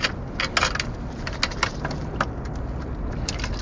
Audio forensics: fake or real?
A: real